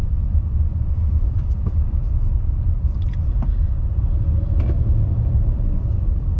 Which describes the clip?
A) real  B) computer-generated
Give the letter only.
B